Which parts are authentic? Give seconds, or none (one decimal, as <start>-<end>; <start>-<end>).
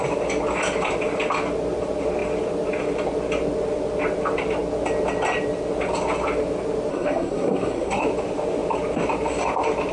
0.0-6.9; 8.0-9.9